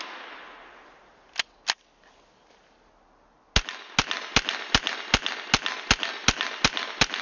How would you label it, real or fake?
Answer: real